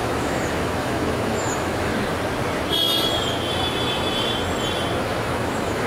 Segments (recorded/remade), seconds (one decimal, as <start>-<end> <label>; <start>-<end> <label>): 0.0-1.9 remade; 1.9-5.0 recorded; 5.0-5.9 remade